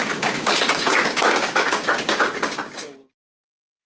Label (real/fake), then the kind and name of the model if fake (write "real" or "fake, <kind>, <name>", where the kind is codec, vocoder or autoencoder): fake, codec, DAC